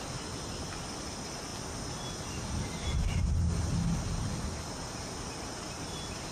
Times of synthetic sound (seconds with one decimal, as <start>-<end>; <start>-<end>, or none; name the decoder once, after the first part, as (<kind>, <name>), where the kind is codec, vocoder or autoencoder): none